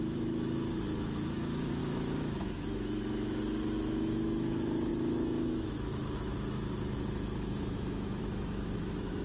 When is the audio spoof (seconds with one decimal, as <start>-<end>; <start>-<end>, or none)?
0.0-9.2